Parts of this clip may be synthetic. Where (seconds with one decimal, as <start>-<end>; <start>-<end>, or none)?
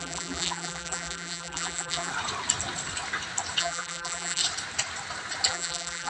0.0-2.1; 3.6-4.4; 5.5-6.1